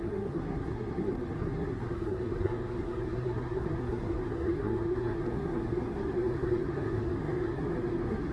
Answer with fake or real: fake